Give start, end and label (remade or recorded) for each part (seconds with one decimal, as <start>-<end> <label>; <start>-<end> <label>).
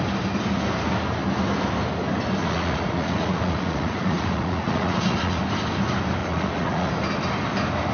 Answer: 0.0-2.4 recorded; 2.4-5.4 remade; 5.4-6.2 recorded; 6.2-6.9 remade; 6.9-7.9 recorded